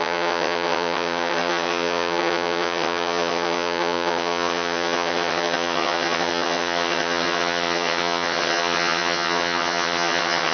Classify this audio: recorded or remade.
remade